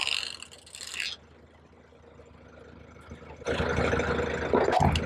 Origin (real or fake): real